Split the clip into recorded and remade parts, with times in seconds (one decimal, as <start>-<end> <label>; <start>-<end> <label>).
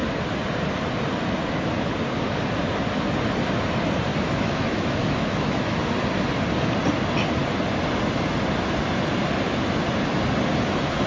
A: 0.0-4.1 recorded; 4.1-5.8 remade; 5.8-11.1 recorded